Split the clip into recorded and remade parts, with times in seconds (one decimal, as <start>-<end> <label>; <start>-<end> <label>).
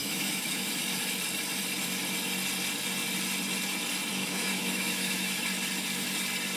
0.0-0.7 remade; 0.7-4.1 recorded; 4.1-5.3 remade; 5.3-6.6 recorded